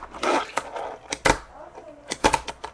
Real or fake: real